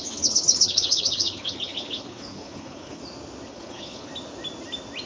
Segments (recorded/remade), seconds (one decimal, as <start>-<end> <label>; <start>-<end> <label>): 0.0-3.0 remade; 3.0-3.5 recorded; 3.5-4.1 remade; 4.1-5.1 recorded